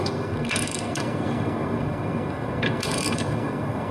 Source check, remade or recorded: remade